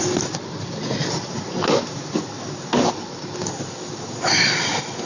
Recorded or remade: recorded